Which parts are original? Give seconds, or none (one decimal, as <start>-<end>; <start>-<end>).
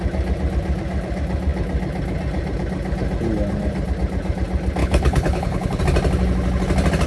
0.0-4.8; 5.8-7.1